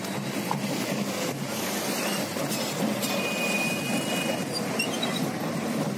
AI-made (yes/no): no